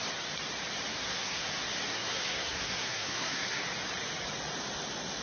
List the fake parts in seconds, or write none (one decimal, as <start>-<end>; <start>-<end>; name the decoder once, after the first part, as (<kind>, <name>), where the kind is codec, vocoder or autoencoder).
0.9-1.5 (codec, SNAC); 1.9-3.6